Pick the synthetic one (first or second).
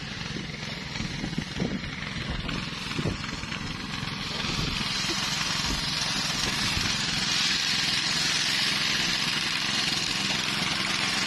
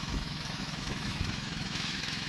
second